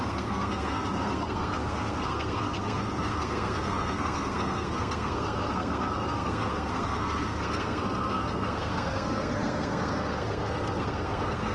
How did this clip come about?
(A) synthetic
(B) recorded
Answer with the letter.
A